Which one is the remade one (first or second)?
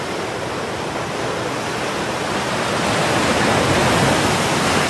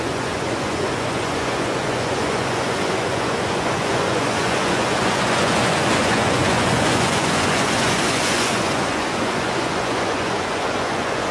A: second